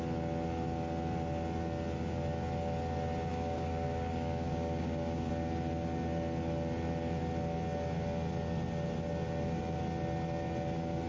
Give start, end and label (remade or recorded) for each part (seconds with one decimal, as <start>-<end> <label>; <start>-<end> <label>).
0.0-3.3 recorded; 3.3-5.3 remade; 5.3-11.1 recorded